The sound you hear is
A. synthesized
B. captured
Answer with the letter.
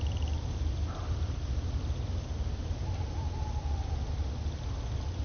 B